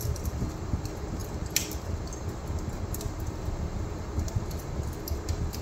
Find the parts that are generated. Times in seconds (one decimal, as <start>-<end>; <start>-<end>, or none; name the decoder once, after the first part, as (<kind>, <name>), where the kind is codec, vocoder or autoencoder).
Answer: none